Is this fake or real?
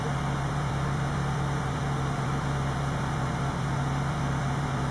fake